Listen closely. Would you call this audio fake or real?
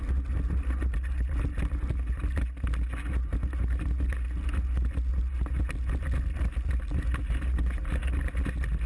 real